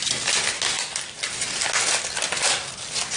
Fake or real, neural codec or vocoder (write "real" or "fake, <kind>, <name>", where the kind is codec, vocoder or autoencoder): real